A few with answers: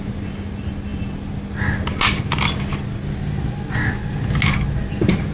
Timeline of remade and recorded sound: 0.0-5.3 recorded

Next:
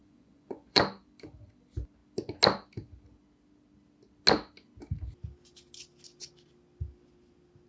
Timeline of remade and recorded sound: 0.0-0.8 remade; 0.8-7.7 recorded